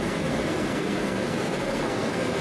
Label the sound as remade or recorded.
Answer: remade